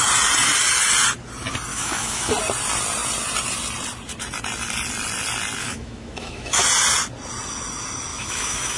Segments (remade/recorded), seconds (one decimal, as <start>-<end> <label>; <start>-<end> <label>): 0.0-1.7 recorded; 1.7-2.3 remade; 2.3-5.6 recorded; 5.6-6.6 remade; 6.6-8.1 recorded; 8.1-8.8 remade